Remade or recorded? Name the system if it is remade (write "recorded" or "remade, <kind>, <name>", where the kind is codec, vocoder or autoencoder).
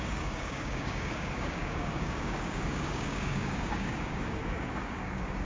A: remade, codec, DAC